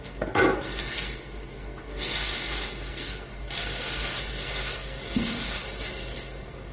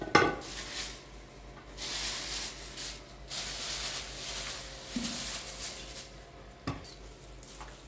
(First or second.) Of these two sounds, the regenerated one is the first